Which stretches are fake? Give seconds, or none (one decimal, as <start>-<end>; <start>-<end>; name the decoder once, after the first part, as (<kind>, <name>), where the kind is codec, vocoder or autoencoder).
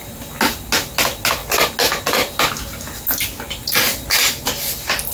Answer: none